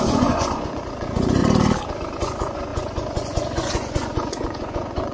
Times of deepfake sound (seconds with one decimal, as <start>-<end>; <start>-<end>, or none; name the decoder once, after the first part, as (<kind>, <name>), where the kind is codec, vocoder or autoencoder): 0.0-1.4 (vocoder, Vocos); 2.2-5.1

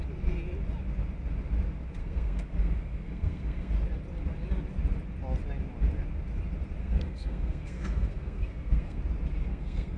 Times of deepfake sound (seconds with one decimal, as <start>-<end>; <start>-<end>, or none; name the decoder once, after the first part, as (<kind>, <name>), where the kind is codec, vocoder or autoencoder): 2.0-3.7 (codec, SNAC); 6.8-9.0; 9.5-10.0

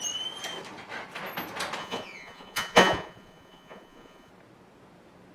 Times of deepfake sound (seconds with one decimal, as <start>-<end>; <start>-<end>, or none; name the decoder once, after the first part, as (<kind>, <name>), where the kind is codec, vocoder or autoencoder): 1.8-4.3 (vocoder, Vocos)

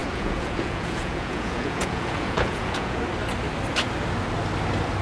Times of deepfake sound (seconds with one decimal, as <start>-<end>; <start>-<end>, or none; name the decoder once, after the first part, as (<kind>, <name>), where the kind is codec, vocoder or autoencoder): 0.0-3.0 (vocoder, Vocos)

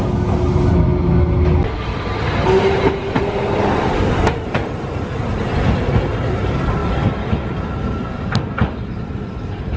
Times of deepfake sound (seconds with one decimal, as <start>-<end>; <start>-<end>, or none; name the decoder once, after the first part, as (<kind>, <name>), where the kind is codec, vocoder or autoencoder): none

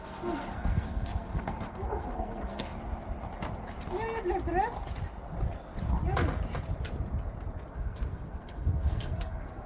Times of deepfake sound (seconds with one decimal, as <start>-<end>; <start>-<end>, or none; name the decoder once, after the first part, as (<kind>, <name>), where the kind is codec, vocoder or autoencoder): 0.0-2.7 (codec, SNAC); 7.7-9.7

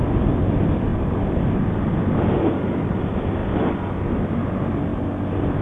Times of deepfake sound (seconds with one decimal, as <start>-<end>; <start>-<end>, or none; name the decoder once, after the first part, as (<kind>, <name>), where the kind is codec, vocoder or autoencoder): none